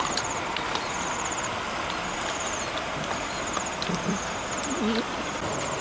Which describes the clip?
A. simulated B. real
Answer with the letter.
B